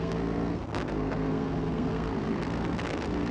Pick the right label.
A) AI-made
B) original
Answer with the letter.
A